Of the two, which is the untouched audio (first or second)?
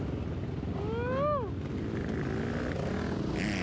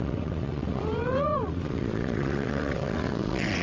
first